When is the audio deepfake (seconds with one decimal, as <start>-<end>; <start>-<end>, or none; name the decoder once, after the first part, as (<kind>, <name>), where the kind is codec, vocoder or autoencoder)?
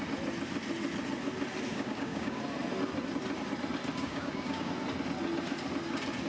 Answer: 1.7-2.4 (codec, DAC); 4.0-4.7